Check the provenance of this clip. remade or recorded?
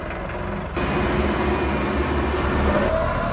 recorded